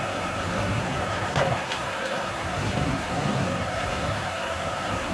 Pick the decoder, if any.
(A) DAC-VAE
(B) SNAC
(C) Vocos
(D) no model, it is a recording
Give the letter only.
B